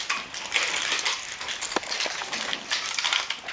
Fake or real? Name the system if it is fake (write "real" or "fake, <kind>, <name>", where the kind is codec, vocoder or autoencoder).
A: real